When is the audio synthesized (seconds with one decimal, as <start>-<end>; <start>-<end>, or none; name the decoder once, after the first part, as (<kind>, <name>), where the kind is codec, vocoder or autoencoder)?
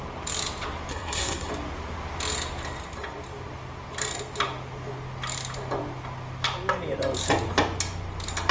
0.9-1.5 (codec, SNAC)